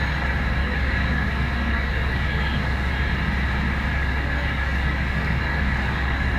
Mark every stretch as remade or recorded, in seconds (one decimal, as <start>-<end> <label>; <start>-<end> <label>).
0.0-0.6 recorded; 0.6-2.9 remade; 2.9-4.0 recorded; 4.0-6.4 remade